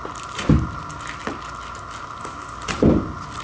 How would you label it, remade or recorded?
recorded